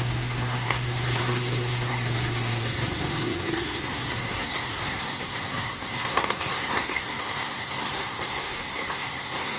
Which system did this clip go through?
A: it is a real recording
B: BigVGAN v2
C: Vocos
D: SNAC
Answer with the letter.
D